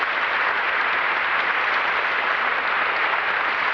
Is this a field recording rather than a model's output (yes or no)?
yes